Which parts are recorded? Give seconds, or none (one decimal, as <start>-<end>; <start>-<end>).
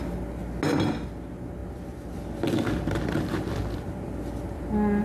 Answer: 0.0-1.6; 4.6-5.0